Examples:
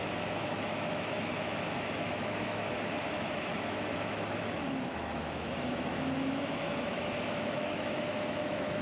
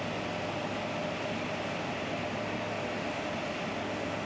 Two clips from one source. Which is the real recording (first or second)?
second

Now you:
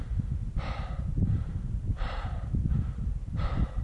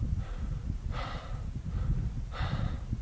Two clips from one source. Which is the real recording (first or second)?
second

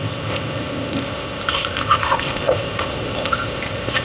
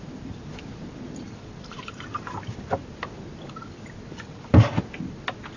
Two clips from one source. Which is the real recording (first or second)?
second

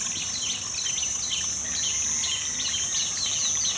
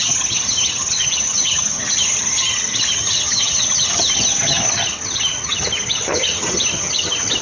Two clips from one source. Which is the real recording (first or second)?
first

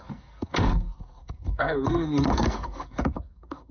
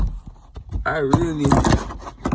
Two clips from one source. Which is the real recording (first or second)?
second